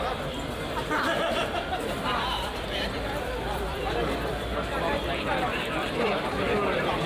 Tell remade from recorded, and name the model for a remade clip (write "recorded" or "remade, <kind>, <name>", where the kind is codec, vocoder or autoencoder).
remade, vocoder, BigVGAN v2